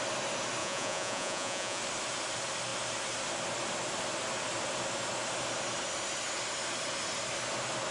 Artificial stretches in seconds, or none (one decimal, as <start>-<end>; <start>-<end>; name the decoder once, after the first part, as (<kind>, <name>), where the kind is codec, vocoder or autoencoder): 0.6-1.8 (vocoder, Vocos)

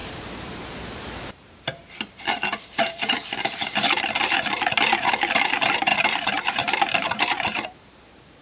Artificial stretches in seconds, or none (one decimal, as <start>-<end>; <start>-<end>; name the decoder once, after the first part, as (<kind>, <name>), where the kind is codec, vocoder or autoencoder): 0.0-8.4 (vocoder, BigVGAN v2)

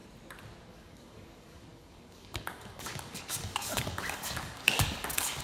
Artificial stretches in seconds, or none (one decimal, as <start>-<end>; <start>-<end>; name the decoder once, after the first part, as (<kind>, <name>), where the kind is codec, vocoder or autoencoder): 0.7-5.4 (codec, DAC)

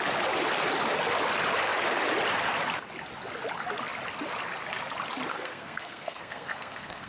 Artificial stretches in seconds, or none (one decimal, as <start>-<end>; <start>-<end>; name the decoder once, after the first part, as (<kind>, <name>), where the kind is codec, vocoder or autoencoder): 5.3-7.1 (codec, SNAC)

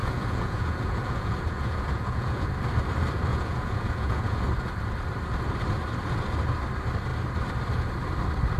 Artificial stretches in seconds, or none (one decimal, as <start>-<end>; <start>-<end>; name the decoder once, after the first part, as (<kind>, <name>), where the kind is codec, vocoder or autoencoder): 0.0-2.5 (vocoder, Vocos); 3.3-4.4

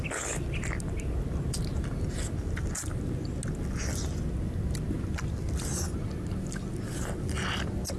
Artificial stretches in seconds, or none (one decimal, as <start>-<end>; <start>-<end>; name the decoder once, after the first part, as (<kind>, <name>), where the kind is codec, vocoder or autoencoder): none

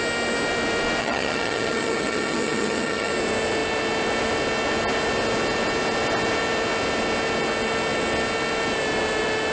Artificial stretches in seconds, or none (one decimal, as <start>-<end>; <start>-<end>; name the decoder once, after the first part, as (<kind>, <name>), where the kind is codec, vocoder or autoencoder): 1.0-3.1 (vocoder, HiFi-GAN)